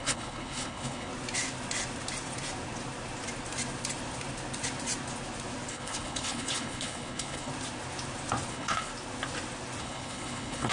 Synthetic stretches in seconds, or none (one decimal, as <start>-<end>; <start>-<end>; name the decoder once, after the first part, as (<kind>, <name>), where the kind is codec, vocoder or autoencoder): 0.0-1.1 (codec, HILCodec); 5.7-7.5; 8.5-8.9; 9.8-10.7